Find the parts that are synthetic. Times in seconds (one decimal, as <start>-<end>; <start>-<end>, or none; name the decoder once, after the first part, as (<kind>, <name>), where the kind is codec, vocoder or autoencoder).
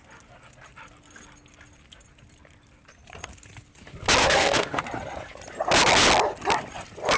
4.2-4.8 (autoencoder, DAC-VAE)